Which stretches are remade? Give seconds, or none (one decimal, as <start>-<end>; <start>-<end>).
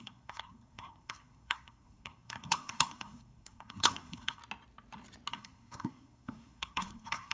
0.0-4.4; 5.3-7.3